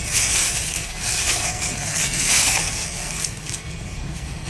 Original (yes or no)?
no